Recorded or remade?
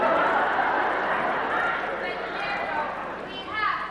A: recorded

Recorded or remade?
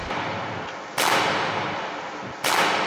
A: recorded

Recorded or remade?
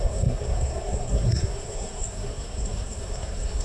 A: remade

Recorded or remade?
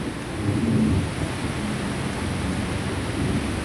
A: recorded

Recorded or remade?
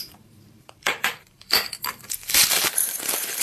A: remade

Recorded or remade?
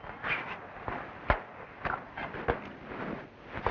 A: recorded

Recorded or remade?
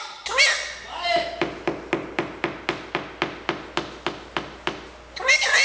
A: recorded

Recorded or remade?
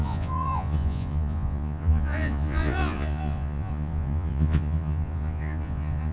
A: remade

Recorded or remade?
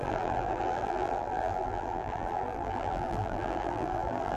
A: remade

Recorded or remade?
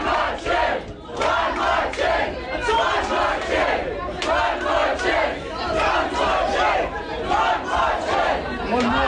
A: recorded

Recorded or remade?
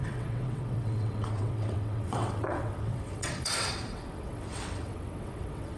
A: remade